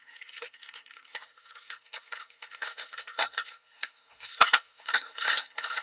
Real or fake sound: fake